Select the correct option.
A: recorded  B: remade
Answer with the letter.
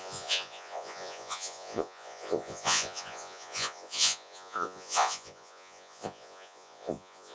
B